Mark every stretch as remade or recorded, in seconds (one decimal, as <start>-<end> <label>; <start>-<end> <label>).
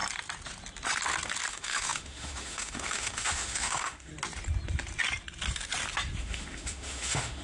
0.0-1.5 recorded; 1.5-4.1 remade; 4.1-6.2 recorded; 6.2-7.4 remade